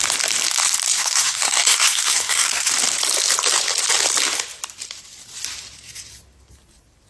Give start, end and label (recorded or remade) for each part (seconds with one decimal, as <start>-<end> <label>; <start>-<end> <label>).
0.0-1.0 recorded; 1.0-2.7 remade; 2.7-7.1 recorded